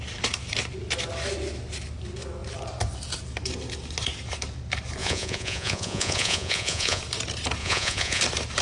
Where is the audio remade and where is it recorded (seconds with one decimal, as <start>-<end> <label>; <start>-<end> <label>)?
0.0-5.0 recorded; 5.0-7.0 remade; 7.0-7.6 recorded; 7.6-8.2 remade; 8.2-8.6 recorded